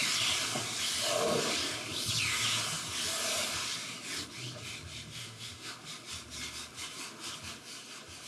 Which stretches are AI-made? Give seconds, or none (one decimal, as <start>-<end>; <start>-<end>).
5.2-5.7